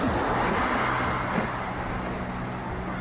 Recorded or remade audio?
recorded